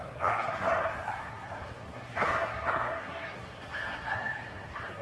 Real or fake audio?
fake